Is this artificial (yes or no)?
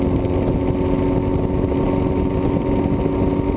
no